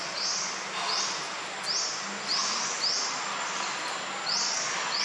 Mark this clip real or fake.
real